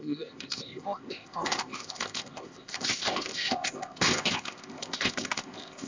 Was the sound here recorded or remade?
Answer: remade